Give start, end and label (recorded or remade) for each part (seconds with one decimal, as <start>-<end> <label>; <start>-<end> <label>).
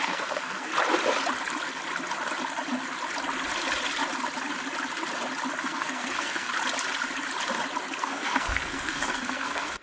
0.0-0.7 remade; 0.7-5.6 recorded; 5.6-6.5 remade; 6.5-8.0 recorded; 8.0-9.8 remade